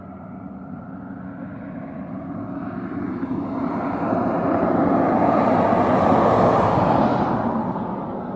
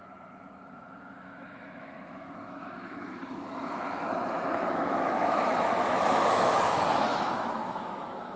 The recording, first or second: first